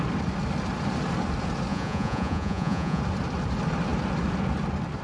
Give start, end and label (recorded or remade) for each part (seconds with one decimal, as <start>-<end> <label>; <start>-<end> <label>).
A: 0.0-1.7 recorded; 1.7-3.0 remade; 3.0-5.0 recorded